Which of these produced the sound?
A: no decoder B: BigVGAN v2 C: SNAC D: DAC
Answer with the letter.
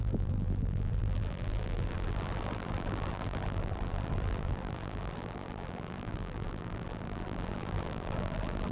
B